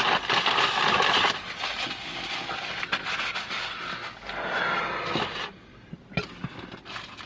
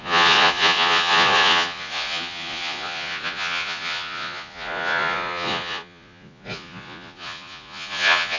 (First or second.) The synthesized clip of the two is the second